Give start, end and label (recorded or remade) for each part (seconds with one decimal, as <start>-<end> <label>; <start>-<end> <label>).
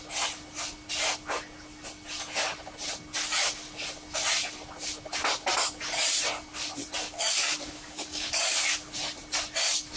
0.0-7.0 recorded; 7.0-8.5 remade; 8.5-10.0 recorded